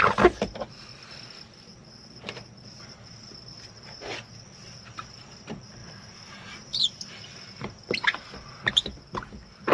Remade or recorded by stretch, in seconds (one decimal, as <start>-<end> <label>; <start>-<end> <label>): 0.0-5.8 recorded; 5.8-7.2 remade; 7.2-9.7 recorded